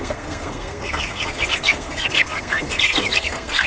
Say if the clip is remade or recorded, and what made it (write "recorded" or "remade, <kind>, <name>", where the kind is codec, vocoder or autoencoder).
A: remade, codec, SNAC